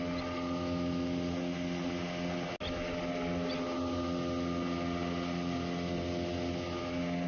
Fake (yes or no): no